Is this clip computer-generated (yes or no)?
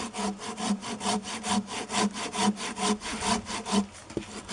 no